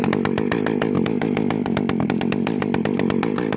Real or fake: real